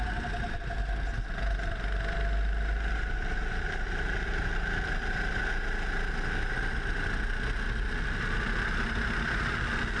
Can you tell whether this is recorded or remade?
recorded